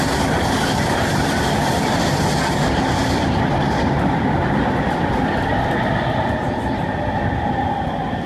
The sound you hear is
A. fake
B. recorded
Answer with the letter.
B